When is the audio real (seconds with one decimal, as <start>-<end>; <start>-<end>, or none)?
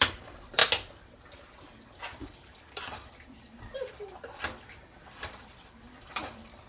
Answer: 0.6-2.0